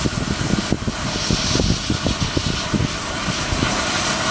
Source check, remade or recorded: recorded